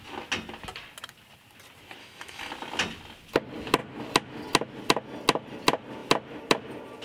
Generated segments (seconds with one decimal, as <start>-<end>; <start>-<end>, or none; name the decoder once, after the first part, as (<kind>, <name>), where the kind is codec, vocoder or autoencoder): 2.0-2.5 (autoencoder, DAC-VAE)